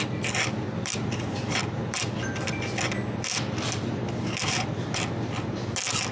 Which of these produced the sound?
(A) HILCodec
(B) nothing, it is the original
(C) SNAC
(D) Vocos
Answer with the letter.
B